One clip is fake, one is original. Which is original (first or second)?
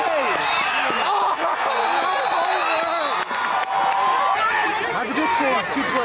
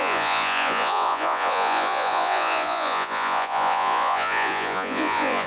first